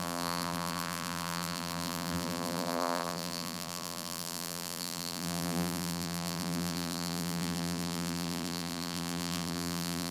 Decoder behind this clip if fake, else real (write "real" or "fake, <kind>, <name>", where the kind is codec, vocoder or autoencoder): fake, vocoder, BigVGAN v2